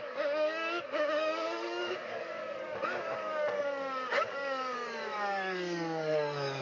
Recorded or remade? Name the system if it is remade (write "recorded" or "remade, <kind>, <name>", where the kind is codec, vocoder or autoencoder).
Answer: remade, codec, DAC